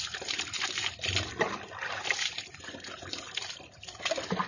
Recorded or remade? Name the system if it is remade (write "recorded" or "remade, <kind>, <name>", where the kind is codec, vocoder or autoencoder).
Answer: recorded